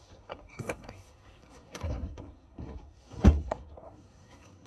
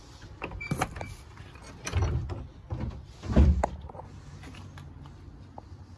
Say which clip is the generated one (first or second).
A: first